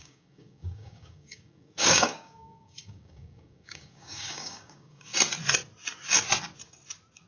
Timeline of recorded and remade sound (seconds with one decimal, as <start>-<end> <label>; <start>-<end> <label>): 0.0-5.1 remade; 5.1-7.3 recorded